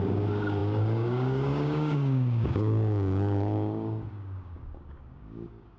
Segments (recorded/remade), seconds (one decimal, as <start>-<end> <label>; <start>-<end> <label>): 0.0-5.8 remade